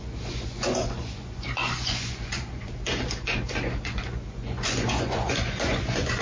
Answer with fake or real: fake